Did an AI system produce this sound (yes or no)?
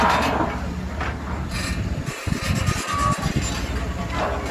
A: no